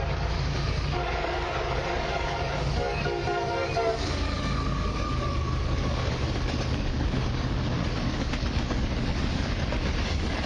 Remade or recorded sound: remade